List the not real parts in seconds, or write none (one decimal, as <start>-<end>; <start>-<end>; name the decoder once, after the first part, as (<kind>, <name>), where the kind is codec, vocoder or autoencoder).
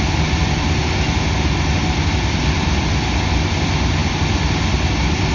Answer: none